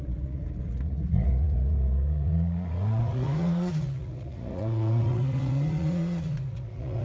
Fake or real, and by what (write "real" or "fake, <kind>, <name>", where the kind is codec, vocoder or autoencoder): fake, vocoder, Vocos